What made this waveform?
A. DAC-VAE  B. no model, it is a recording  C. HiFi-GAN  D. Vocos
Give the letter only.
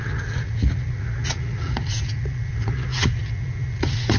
D